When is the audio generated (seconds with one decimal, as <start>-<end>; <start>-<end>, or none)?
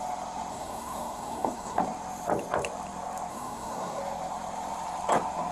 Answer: 0.5-1.8; 3.3-4.0